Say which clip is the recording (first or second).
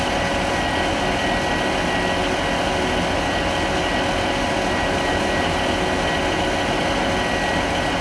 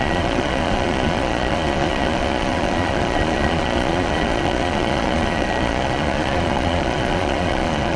first